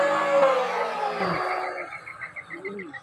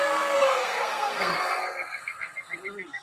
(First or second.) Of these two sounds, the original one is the first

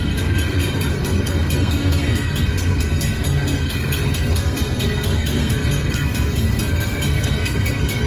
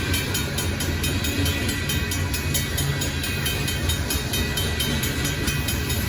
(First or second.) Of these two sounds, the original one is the second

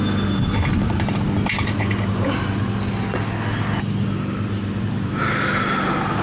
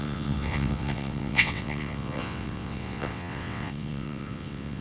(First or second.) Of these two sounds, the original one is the first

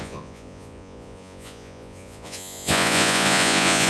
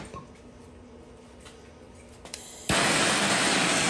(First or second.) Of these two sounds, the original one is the second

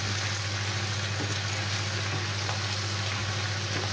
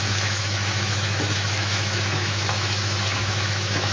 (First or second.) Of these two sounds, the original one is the first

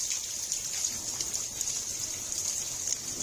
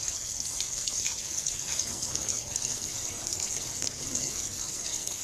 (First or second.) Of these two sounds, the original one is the first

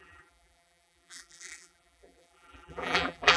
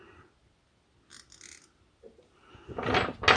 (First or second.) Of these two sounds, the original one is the second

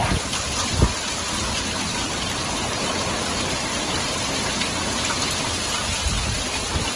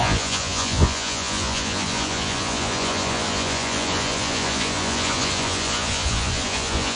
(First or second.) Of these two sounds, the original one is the first